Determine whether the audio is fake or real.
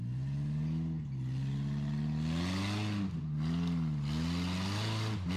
real